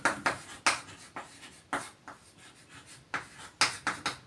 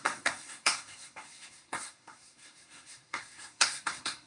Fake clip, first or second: second